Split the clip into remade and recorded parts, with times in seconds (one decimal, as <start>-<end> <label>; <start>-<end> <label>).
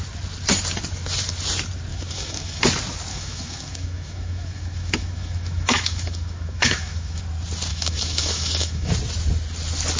0.0-1.9 recorded; 1.9-2.6 remade; 2.6-3.1 recorded; 3.1-7.2 remade; 7.2-7.7 recorded; 7.7-8.9 remade; 8.9-10.0 recorded